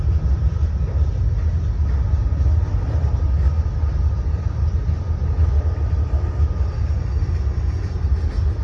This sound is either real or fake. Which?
real